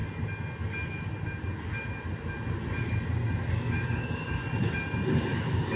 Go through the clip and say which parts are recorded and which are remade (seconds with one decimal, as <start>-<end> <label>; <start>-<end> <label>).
0.0-3.5 recorded; 3.5-4.4 remade; 4.4-5.3 recorded; 5.3-5.8 remade